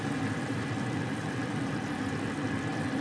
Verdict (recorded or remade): recorded